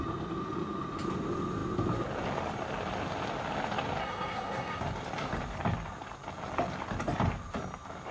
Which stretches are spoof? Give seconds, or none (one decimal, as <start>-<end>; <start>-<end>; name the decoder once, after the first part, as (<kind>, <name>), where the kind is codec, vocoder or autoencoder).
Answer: 4.0-4.8 (codec, SNAC)